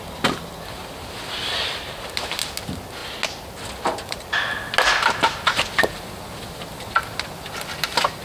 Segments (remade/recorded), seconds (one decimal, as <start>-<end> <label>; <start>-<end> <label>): 0.0-8.2 recorded

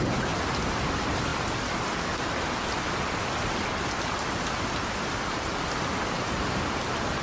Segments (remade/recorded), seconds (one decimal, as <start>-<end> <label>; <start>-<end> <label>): 0.0-7.2 recorded

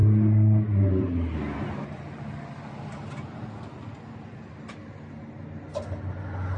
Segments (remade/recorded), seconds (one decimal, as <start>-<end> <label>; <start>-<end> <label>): 0.0-6.6 recorded

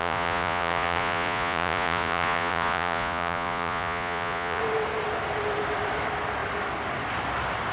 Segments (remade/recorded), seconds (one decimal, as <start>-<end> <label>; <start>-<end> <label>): 0.0-4.6 remade; 4.6-7.7 recorded

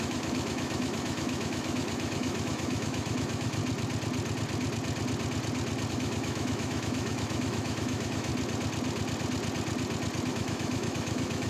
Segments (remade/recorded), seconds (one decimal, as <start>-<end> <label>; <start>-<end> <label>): 0.0-3.6 remade; 3.6-5.9 recorded; 5.9-8.3 remade; 8.3-10.3 recorded; 10.3-11.5 remade

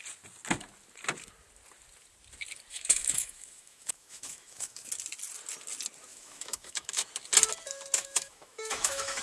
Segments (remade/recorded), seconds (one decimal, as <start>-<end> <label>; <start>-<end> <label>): 0.0-2.7 recorded; 2.7-4.9 remade; 4.9-6.1 recorded; 6.1-7.1 remade; 7.1-8.0 recorded; 8.0-9.2 remade